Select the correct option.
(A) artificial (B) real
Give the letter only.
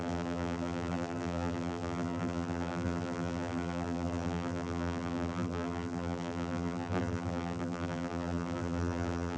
A